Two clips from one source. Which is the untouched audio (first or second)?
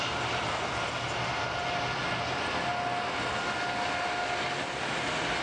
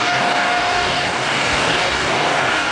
first